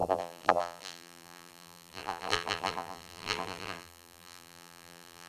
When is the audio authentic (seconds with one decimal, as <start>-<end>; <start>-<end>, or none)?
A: none